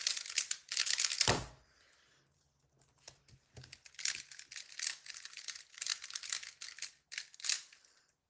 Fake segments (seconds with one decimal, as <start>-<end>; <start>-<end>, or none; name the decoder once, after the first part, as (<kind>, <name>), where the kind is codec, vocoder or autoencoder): none

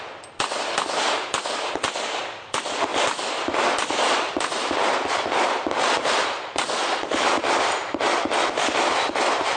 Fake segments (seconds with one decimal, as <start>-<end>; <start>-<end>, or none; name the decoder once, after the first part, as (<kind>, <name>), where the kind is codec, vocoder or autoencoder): 2.9-5.6 (vocoder, BigVGAN v2); 6.8-9.6

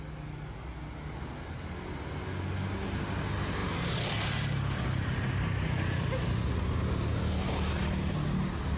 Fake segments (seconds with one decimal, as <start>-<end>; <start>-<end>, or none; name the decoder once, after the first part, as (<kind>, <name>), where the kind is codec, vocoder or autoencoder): none

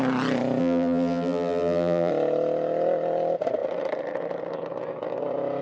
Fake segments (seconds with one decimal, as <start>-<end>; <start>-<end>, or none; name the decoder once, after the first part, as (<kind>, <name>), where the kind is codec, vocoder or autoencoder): 0.6-2.1 (vocoder, BigVGAN v2)

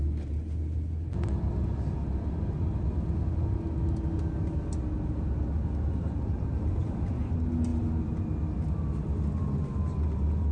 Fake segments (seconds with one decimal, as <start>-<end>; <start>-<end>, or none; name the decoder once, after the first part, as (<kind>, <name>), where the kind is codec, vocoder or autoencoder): 6.8-7.3 (vocoder, BigVGAN v2); 7.7-8.8